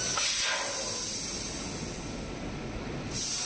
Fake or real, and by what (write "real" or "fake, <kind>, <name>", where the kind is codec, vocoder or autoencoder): real